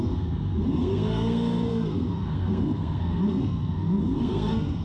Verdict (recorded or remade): remade